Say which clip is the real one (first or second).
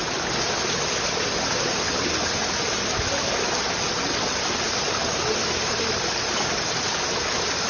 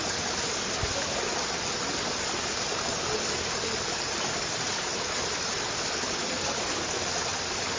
first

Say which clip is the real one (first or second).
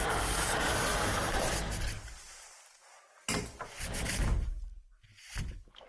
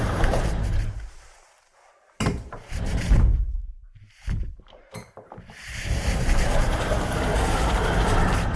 first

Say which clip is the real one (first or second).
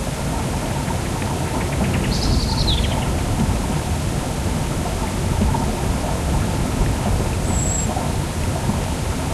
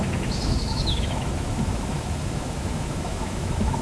first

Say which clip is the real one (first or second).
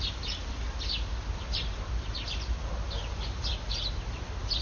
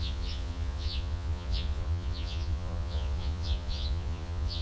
first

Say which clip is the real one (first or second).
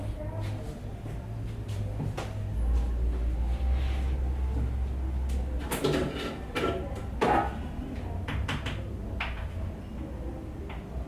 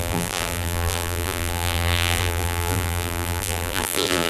first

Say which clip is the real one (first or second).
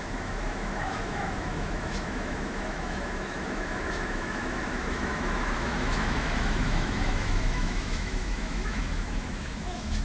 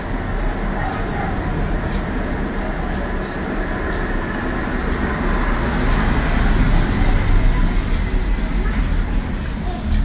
second